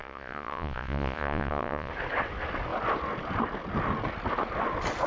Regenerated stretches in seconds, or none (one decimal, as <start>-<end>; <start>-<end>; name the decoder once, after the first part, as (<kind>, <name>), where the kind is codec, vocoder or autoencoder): 0.0-1.9 (vocoder, Vocos)